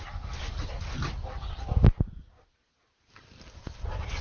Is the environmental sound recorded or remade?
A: recorded